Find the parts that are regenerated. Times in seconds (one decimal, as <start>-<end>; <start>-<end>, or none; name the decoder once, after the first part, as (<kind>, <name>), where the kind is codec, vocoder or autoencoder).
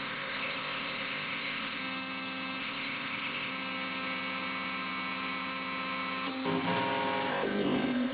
0.0-1.8 (codec, ZipCodec); 2.6-3.5; 7.3-8.1